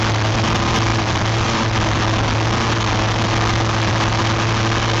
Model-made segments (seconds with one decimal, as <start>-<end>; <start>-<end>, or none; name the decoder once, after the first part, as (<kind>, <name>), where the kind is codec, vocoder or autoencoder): 0.9-1.8 (vocoder, BigVGAN v2)